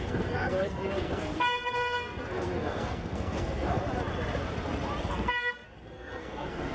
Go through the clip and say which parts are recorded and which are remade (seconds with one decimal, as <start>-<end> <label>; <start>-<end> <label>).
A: 0.0-3.8 remade; 3.8-5.1 recorded; 5.1-6.7 remade